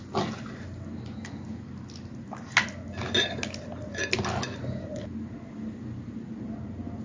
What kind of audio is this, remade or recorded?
recorded